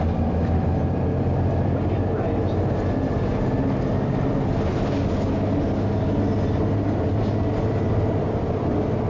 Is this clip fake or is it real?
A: real